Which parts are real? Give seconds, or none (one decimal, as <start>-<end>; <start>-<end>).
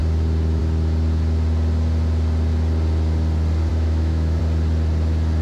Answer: 0.0-3.7; 4.4-5.4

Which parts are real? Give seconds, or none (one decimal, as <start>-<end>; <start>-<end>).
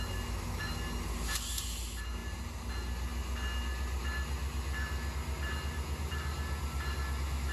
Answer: 0.0-7.5